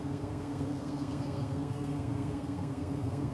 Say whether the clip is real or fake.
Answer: fake